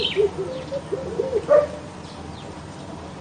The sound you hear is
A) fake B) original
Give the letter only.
B